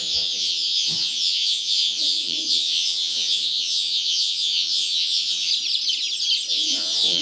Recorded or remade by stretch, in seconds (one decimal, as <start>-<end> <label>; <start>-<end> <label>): 0.0-5.5 remade; 5.5-6.5 recorded; 6.5-7.2 remade